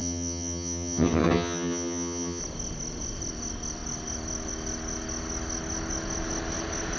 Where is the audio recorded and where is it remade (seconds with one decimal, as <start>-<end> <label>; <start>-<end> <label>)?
0.0-2.4 remade; 2.4-7.0 recorded